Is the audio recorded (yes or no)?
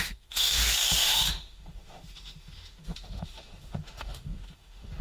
no